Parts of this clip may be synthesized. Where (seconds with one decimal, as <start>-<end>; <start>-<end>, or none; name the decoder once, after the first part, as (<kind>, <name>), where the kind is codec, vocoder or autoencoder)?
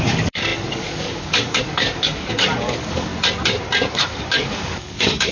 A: 0.0-3.1 (codec, DAC); 3.9-5.3